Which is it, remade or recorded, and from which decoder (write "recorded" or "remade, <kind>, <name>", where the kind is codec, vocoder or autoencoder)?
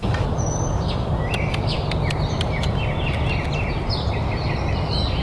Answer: recorded